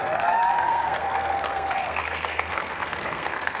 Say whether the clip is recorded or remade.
remade